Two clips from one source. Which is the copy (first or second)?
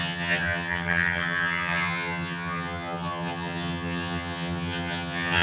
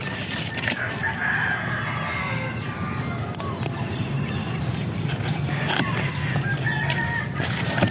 first